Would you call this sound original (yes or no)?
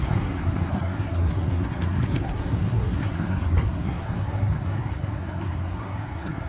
no